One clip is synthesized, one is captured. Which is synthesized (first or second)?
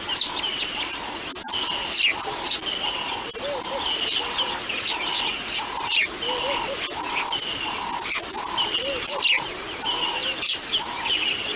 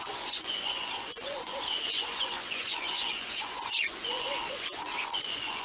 second